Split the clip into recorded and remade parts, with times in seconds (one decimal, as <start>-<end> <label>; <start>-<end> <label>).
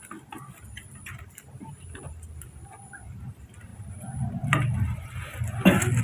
0.0-6.0 recorded